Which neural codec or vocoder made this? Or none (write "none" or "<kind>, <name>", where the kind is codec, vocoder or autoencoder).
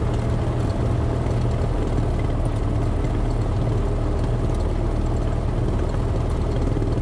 none